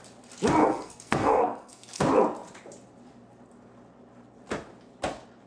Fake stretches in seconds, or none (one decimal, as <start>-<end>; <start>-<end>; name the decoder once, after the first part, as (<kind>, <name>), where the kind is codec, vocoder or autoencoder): 0.6-2.0 (codec, SNAC)